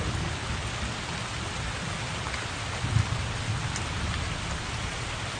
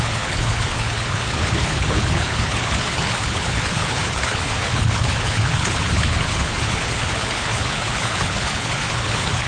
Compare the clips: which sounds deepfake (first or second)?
second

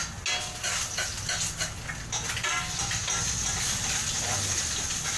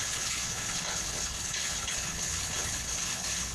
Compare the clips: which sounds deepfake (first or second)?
second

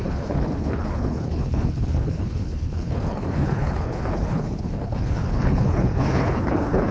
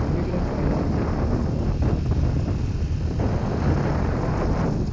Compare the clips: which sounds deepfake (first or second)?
first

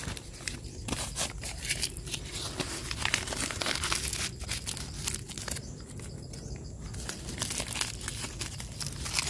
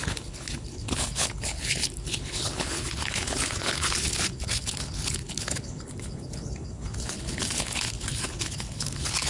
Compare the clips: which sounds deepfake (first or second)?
second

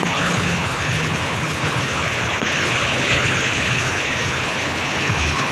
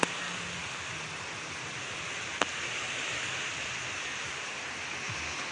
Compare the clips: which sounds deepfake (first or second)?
first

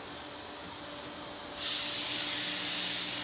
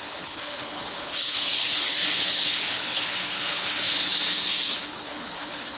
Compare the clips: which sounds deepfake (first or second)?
second